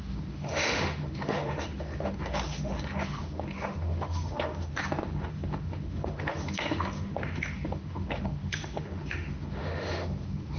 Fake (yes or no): yes